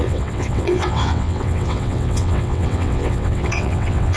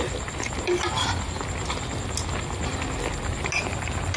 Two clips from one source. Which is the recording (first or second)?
second